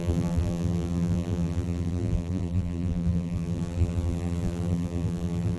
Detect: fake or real fake